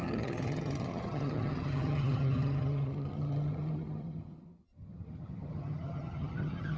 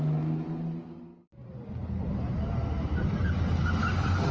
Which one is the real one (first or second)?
second